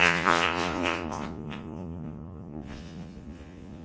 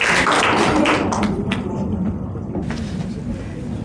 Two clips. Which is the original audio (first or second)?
second